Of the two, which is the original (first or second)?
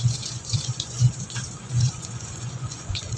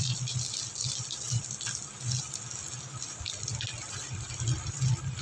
second